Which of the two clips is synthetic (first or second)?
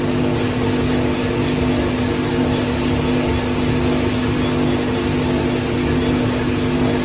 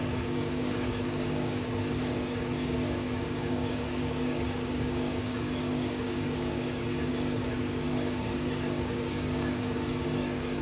second